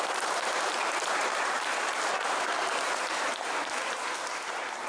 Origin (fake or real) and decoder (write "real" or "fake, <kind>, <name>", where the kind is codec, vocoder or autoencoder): fake, vocoder, BigVGAN v2